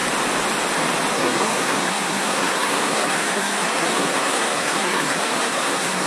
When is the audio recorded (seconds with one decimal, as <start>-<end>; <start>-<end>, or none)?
0.0-1.1